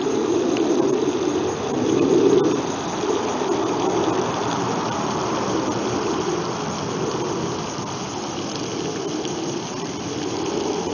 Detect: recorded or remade recorded